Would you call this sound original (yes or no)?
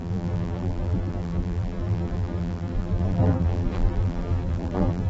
no